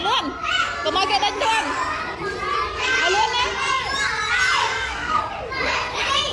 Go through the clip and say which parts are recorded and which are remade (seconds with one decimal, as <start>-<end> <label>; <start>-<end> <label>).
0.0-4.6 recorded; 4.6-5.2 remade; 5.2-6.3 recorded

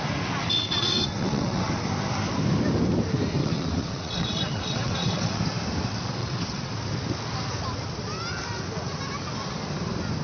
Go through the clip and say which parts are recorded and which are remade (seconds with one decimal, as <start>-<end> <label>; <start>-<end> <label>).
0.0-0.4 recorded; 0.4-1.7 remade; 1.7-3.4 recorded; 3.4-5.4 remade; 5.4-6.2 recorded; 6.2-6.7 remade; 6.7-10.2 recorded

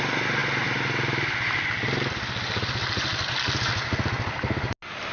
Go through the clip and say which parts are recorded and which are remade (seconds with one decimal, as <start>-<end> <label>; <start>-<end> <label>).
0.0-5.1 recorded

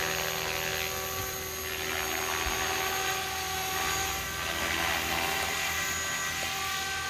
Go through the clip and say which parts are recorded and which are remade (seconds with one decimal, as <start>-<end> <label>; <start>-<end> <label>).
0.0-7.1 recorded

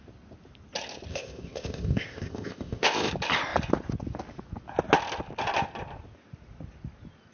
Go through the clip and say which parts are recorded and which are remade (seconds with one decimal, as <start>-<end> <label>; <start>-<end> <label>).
0.0-1.1 recorded; 1.1-3.1 remade; 3.1-7.3 recorded

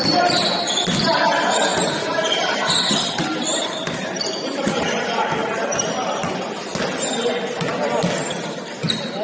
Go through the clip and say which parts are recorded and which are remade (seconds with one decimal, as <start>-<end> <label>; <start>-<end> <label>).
0.0-1.7 recorded; 1.7-5.0 remade; 5.0-5.4 recorded; 5.4-6.3 remade; 6.3-9.2 recorded